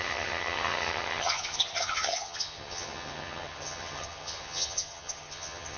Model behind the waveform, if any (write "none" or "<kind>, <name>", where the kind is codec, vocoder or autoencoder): vocoder, HiFi-GAN